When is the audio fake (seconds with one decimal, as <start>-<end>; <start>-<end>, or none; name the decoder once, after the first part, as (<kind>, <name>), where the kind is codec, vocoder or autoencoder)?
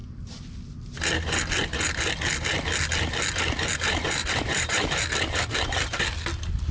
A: 0.0-0.6 (vocoder, BigVGAN v2); 4.2-4.9